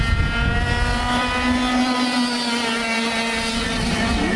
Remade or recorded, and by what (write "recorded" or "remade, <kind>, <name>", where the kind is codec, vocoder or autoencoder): recorded